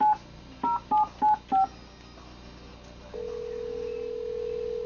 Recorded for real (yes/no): yes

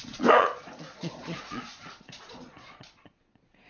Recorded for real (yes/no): no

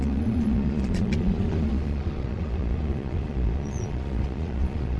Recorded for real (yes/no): no